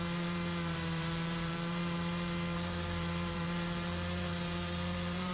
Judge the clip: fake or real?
fake